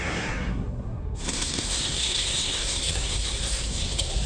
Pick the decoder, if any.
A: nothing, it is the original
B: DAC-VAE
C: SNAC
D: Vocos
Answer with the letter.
C